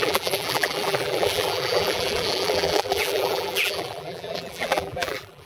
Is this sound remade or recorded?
remade